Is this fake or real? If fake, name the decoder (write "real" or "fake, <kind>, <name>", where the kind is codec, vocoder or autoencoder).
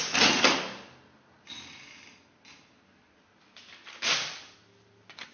real